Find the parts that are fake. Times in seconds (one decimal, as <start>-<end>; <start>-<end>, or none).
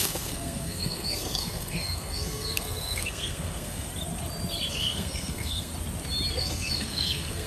0.0-3.9; 4.7-5.7; 6.3-7.5